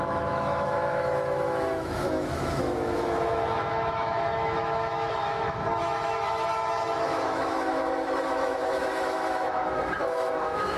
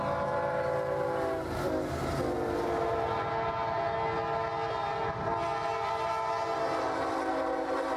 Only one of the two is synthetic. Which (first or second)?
first